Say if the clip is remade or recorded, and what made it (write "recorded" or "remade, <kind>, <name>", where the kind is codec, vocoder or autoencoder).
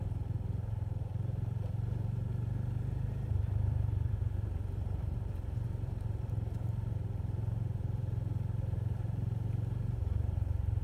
remade, vocoder, BigVGAN v2